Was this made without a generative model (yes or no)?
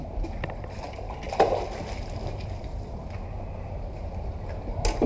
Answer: yes